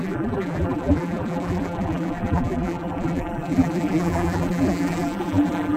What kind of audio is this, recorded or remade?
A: remade